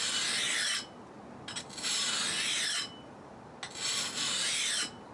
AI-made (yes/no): no